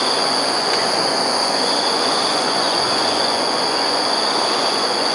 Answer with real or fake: fake